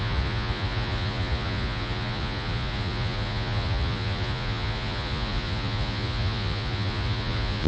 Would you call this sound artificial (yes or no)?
yes